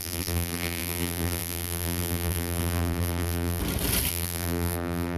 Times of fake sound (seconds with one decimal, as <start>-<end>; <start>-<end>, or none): 0.0-3.6; 4.1-5.2